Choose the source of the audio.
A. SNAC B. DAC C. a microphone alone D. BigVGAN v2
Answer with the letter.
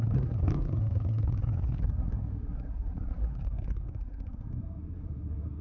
A